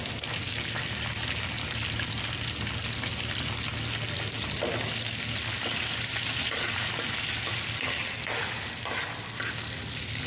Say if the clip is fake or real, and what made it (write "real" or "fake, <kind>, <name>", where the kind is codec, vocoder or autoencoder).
real